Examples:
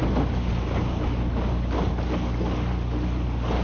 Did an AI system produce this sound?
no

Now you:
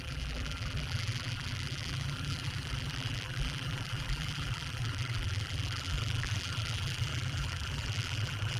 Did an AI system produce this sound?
yes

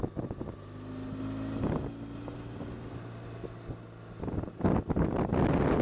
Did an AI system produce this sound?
no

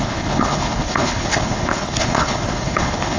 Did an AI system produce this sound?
yes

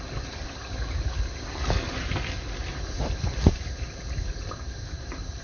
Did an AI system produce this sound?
no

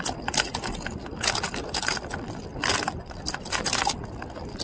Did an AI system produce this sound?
no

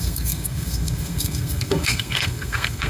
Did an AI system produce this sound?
yes